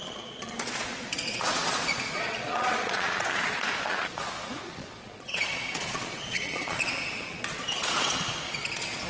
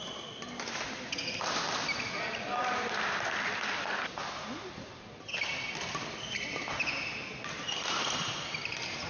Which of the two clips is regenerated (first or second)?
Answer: first